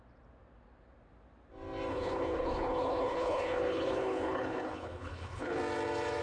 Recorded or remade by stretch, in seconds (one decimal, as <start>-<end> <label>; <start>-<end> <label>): 0.0-1.9 recorded; 1.9-5.6 remade; 5.6-6.2 recorded